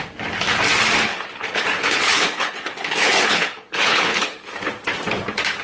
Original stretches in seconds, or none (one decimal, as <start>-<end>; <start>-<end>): 0.0-1.1; 4.5-5.6